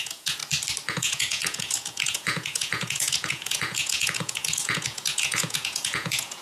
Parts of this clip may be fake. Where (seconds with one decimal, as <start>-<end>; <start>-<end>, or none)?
0.0-0.4; 0.9-6.4